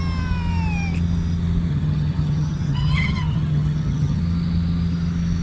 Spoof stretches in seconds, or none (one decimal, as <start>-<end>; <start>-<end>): 1.7-4.2